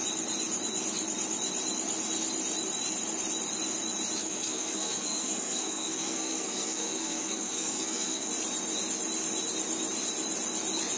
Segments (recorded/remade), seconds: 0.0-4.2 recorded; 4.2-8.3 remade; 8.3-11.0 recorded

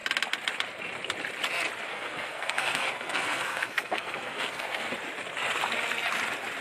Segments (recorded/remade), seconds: 0.0-1.9 recorded; 1.9-4.9 remade; 4.9-6.6 recorded

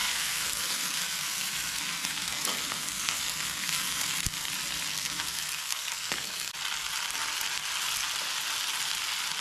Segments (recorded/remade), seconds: 0.0-4.5 remade; 4.5-4.9 recorded; 4.9-6.5 remade; 6.5-9.4 recorded

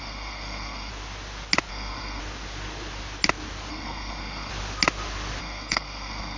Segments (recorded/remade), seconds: 0.0-0.9 remade; 0.9-1.7 recorded; 1.7-2.2 remade; 2.2-3.7 recorded; 3.7-4.5 remade; 4.5-5.4 recorded; 5.4-6.4 remade

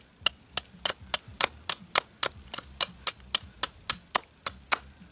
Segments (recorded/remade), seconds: 0.0-5.1 recorded

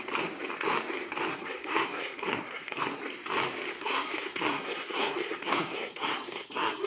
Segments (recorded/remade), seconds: 0.0-1.3 recorded; 1.3-3.0 remade; 3.0-3.7 recorded; 3.7-6.9 remade